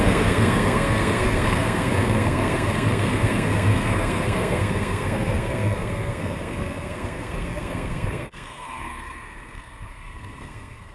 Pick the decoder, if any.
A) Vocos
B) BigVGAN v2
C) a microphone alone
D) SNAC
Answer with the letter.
D